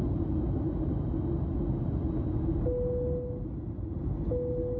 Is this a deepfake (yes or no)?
no